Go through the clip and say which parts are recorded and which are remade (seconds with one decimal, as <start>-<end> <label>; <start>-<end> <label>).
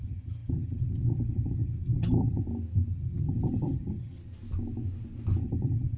0.0-2.4 remade; 2.4-2.9 recorded; 2.9-4.2 remade; 4.2-5.4 recorded; 5.4-6.0 remade